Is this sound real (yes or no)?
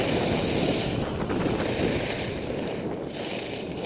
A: yes